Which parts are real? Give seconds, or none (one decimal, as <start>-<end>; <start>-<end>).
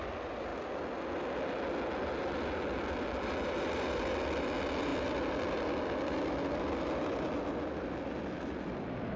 0.0-9.2